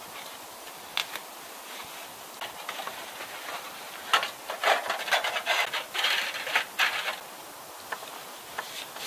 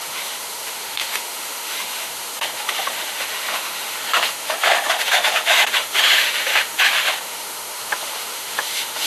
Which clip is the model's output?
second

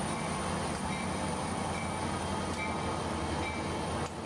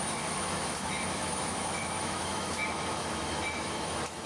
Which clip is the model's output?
second